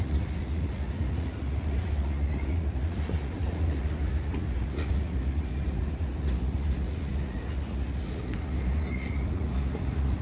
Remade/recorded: remade